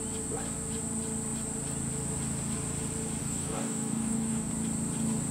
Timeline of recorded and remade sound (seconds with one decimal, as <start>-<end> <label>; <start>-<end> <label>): 0.0-3.2 recorded; 3.2-4.5 remade; 4.5-5.3 recorded